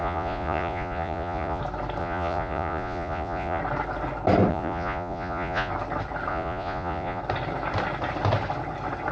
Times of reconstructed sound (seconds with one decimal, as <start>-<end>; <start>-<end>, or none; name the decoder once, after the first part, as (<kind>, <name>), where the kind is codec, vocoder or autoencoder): 0.0-1.6 (vocoder, Vocos); 2.0-3.6; 4.5-5.7; 6.3-7.2